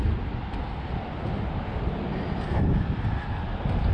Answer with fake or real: real